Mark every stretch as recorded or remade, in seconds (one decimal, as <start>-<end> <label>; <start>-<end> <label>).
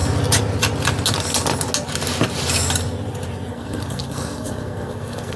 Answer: 0.0-3.5 recorded; 3.5-5.4 remade